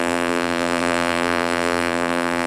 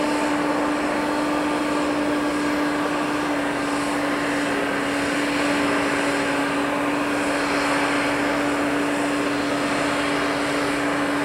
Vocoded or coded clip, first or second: first